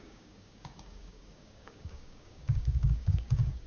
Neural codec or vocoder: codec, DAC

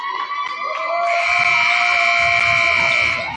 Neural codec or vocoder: none